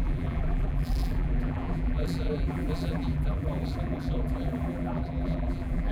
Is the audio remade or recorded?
remade